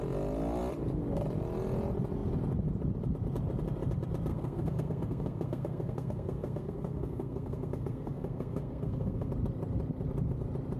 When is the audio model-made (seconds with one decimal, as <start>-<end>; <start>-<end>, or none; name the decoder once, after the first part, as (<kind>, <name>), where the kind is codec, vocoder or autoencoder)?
4.3-9.3 (codec, SNAC)